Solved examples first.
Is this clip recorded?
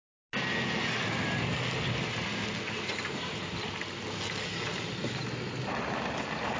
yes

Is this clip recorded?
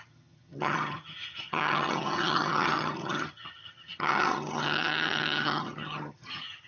no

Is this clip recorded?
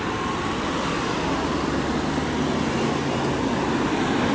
yes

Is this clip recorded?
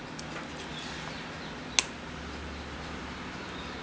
yes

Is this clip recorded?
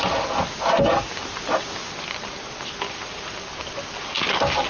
yes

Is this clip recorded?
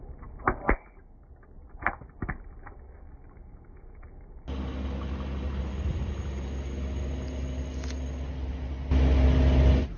yes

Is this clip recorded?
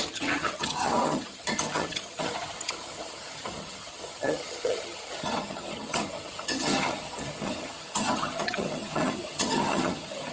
no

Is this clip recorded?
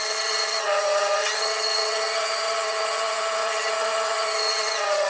no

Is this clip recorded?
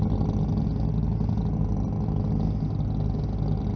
yes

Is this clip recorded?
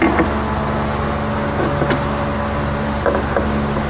yes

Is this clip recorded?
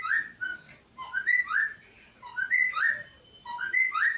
yes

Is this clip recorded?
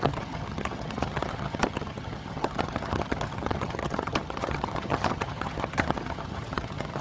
no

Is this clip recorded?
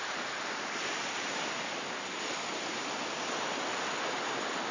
yes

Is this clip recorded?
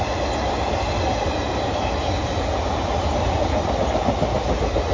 yes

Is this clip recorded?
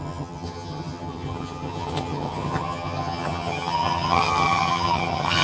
no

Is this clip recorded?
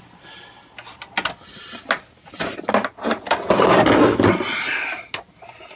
yes